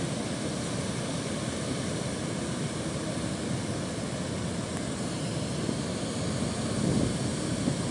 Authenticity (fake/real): real